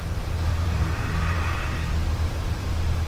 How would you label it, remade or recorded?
remade